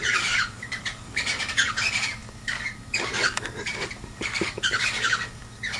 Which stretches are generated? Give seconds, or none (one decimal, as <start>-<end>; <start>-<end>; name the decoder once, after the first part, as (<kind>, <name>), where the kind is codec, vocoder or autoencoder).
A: 0.0-5.8 (codec, DAC)